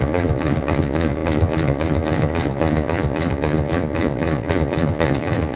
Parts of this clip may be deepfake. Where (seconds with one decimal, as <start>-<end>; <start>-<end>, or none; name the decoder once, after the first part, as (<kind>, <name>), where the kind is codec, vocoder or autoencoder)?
0.0-5.6 (vocoder, Vocos)